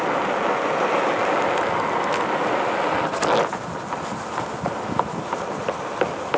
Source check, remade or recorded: recorded